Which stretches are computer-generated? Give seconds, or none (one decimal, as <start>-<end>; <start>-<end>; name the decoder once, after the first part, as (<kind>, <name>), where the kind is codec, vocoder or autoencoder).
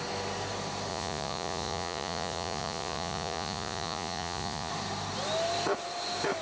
0.9-4.7 (vocoder, Vocos)